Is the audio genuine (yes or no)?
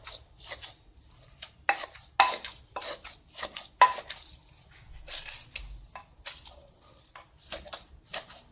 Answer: yes